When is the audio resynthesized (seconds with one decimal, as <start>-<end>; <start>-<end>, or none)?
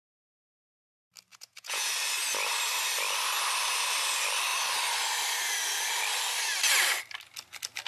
1.3-1.9